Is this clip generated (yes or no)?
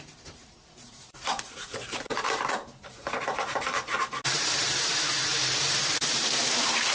yes